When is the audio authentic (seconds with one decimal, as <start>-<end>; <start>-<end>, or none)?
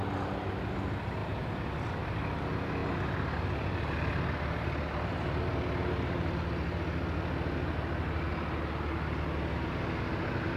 0.0-10.6